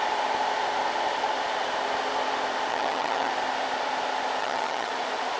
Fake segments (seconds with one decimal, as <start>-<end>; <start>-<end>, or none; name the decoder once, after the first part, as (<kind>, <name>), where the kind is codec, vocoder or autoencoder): 2.7-3.3 (vocoder, HiFi-GAN); 4.4-4.9